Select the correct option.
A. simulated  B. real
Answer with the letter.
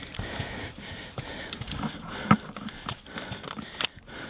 B